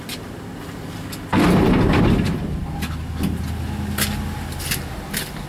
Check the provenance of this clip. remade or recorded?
recorded